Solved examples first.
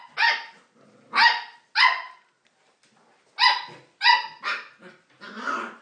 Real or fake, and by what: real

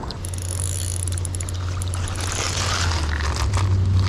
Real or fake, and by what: real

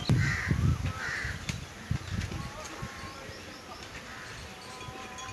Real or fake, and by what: real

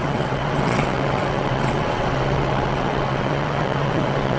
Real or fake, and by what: fake, vocoder, WaveNeXt